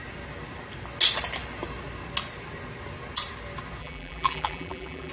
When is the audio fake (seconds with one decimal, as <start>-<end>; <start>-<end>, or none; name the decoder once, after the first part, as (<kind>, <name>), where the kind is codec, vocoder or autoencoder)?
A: 3.8-5.1 (vocoder, BigVGAN v2)